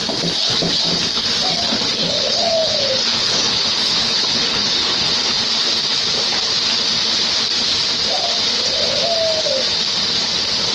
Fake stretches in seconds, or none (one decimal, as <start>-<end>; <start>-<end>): 2.0-5.4